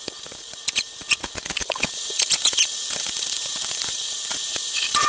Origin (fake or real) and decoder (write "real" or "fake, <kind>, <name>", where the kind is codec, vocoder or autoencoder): fake, vocoder, Vocos